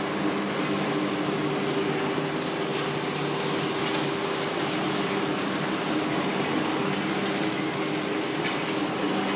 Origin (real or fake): real